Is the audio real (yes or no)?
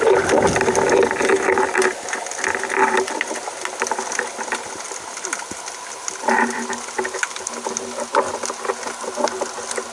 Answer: yes